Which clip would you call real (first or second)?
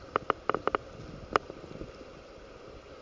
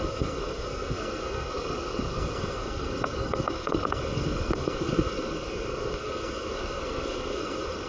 first